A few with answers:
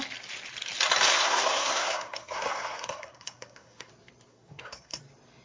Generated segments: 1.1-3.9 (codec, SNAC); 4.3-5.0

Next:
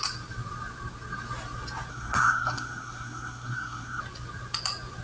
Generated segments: 1.9-4.0 (codec, SNAC)

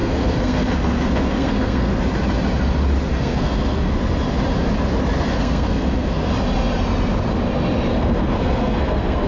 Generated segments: 0.0-2.0 (codec, SNAC); 3.1-3.9; 5.3-6.3; 7.9-9.3

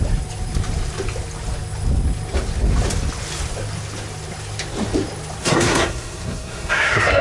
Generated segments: 5.4-7.2 (codec, SNAC)

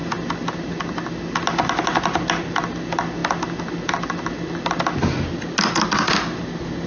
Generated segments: none

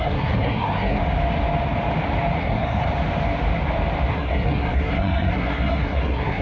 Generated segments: 0.0-1.0 (codec, SNAC); 2.4-2.9; 4.1-6.4